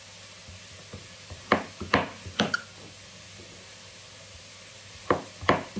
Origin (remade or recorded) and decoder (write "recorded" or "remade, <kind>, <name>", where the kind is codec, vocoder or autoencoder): recorded